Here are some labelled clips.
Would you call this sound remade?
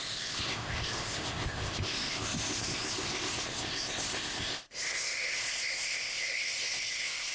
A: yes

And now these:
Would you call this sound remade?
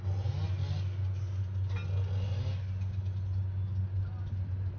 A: no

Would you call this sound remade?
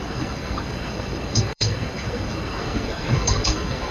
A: yes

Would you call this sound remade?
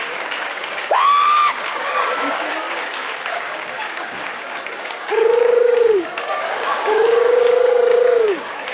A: yes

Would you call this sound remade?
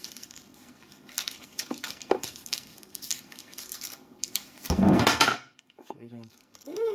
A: yes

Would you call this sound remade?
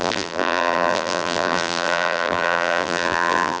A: yes